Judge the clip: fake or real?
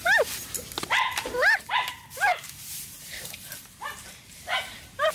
fake